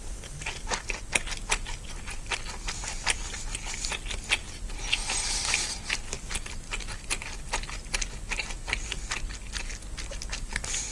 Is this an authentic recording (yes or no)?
yes